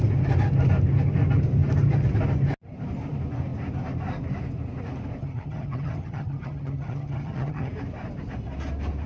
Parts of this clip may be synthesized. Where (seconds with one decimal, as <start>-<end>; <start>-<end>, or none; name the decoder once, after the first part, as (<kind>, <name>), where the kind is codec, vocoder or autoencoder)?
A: 5.2-7.7 (vocoder, HiFi-GAN)